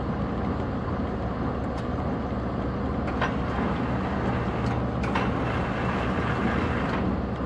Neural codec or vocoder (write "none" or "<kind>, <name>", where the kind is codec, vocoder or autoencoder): none